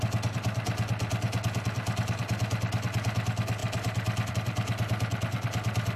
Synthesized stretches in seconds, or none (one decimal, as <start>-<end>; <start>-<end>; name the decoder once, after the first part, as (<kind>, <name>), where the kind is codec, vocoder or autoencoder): none